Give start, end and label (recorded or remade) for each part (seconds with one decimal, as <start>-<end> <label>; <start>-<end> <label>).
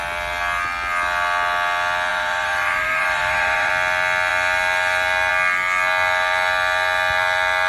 0.0-2.1 recorded; 2.1-3.7 remade; 3.7-7.7 recorded